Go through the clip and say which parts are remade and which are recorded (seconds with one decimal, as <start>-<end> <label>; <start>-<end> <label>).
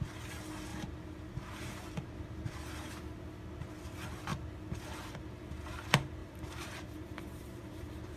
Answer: 0.0-0.7 recorded; 0.7-2.9 remade; 2.9-6.2 recorded; 6.2-8.2 remade